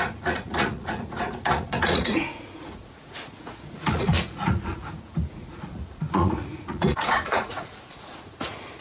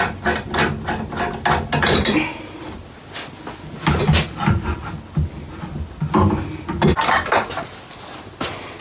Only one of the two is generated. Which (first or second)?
first